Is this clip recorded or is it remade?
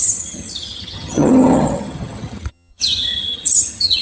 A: remade